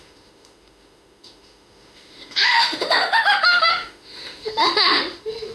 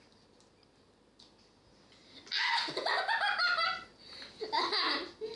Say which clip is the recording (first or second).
second